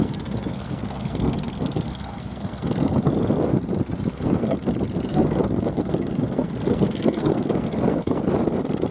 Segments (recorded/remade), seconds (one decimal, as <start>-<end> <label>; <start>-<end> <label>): 0.0-3.1 remade; 3.1-4.1 recorded; 4.1-4.6 remade; 4.6-5.1 recorded; 5.1-8.2 remade; 8.2-8.9 recorded